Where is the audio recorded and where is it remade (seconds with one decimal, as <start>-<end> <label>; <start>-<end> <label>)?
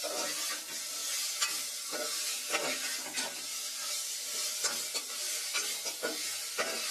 0.0-6.9 recorded